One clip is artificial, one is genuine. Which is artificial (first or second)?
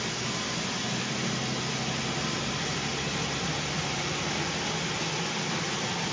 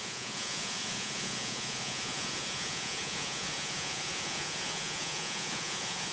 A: second